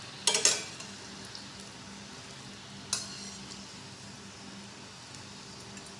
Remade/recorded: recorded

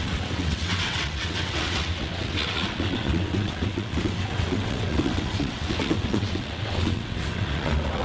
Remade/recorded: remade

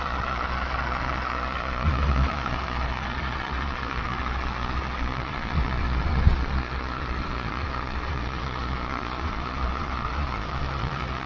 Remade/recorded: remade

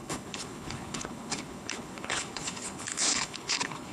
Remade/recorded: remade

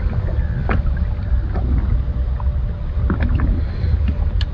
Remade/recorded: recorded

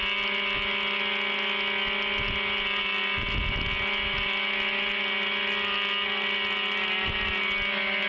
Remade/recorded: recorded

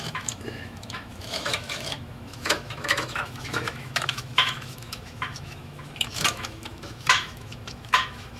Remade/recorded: remade